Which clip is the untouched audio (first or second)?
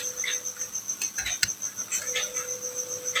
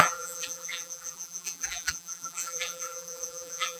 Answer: first